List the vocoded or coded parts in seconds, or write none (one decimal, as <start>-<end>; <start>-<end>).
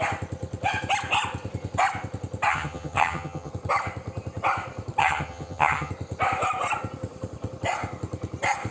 2.5-3.5; 5.0-5.9